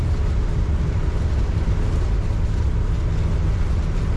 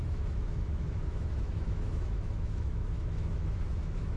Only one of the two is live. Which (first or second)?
first